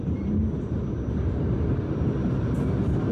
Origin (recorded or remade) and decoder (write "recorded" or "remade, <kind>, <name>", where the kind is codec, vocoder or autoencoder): recorded